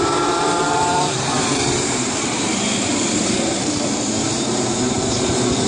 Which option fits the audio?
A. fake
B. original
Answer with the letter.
A